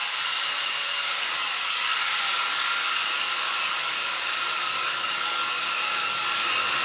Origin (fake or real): fake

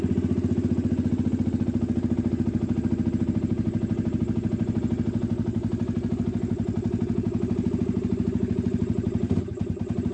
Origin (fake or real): real